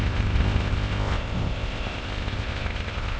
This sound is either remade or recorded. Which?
remade